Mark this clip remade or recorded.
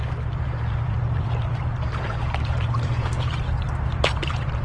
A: remade